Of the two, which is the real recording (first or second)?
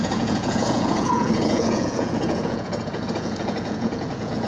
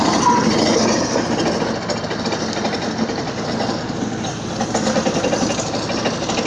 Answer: second